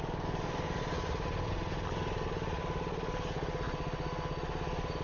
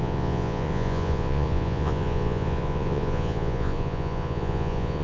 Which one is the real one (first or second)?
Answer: first